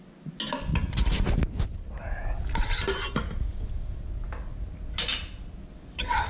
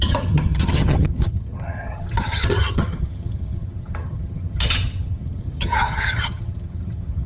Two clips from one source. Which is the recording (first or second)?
first